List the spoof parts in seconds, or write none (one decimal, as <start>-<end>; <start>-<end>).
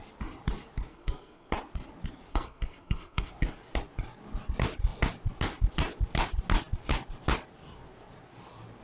0.9-1.5; 2.3-3.3